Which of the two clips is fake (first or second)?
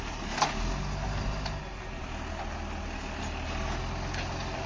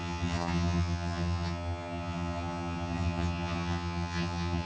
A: second